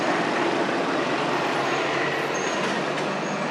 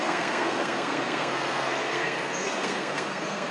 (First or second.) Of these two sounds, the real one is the first